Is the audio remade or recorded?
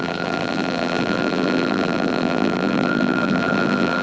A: remade